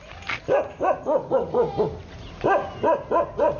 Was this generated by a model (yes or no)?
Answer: no